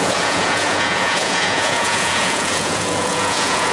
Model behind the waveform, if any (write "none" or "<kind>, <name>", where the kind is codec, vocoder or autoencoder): vocoder, Vocos